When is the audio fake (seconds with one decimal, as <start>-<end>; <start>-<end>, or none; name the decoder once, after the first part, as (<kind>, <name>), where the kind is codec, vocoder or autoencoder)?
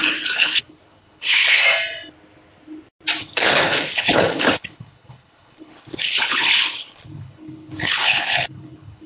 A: 0.0-1.6 (codec, HILCodec); 3.2-9.1